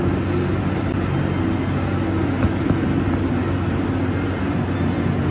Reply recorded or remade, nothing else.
recorded